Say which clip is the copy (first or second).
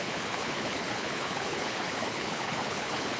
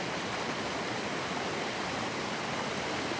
first